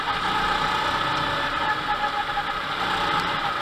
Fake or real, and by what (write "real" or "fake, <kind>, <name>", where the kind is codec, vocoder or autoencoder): real